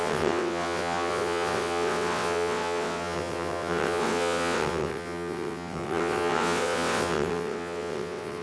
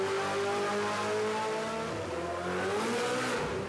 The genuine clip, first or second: second